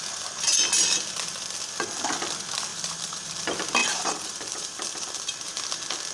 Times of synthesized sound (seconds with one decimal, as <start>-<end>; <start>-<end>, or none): 2.7-3.3; 3.8-5.6